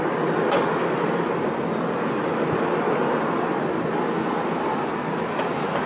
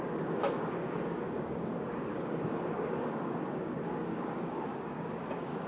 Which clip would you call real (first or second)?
first